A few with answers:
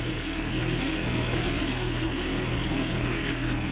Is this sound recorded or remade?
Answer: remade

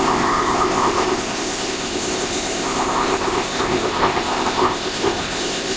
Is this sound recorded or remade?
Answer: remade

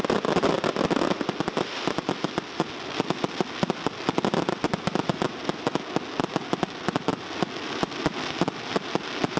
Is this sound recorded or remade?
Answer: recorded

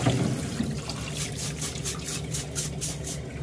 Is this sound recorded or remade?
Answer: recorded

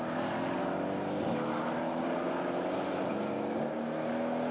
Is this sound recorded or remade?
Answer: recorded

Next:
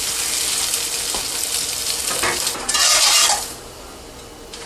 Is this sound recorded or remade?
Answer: recorded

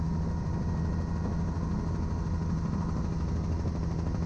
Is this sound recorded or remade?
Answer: recorded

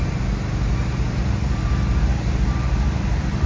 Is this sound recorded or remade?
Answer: remade